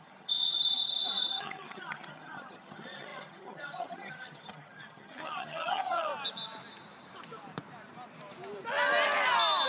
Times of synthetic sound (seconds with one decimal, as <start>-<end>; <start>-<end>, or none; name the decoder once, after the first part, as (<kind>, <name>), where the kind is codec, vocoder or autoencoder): 0.0-6.1 (vocoder, HiFi-GAN)